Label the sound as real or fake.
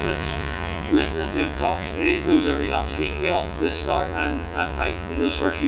fake